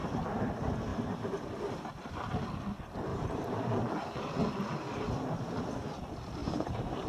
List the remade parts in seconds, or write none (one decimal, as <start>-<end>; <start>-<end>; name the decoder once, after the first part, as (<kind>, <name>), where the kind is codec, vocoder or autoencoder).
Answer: 0.0-0.5 (vocoder, BigVGAN v2); 0.9-2.1; 3.1-3.7; 6.4-7.1